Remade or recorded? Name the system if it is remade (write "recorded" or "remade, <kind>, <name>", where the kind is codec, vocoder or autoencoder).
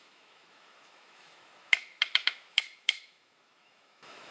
remade, autoencoder, DAC-VAE